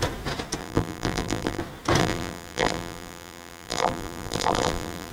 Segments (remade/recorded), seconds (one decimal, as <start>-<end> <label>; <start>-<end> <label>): 0.0-0.6 recorded; 0.6-1.6 remade; 1.6-2.0 recorded; 2.0-5.1 remade